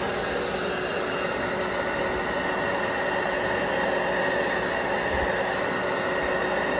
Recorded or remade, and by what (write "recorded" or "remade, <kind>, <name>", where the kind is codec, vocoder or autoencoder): recorded